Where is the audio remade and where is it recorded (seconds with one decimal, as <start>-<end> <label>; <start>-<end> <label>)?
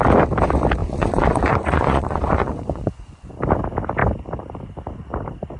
0.0-0.8 recorded; 0.8-3.3 remade; 3.3-5.6 recorded